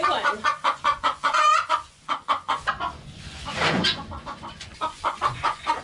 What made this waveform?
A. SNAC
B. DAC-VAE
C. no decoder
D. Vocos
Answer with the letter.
D